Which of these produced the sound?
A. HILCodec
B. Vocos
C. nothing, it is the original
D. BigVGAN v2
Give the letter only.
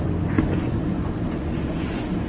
B